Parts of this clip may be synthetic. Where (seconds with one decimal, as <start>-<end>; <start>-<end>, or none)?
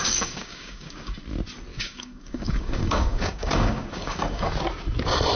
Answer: 0.0-1.1; 1.7-4.5